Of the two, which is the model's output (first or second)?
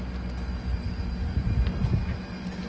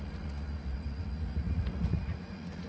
second